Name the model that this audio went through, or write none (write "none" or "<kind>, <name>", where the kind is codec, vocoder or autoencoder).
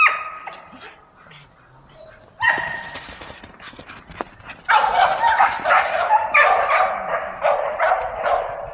none